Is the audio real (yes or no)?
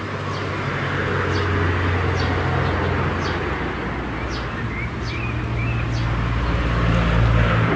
yes